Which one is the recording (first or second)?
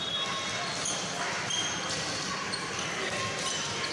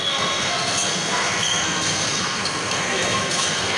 first